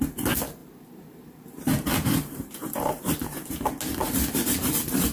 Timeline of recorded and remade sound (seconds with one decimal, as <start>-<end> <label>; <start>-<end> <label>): 0.0-0.6 recorded; 0.6-3.7 remade; 3.7-5.1 recorded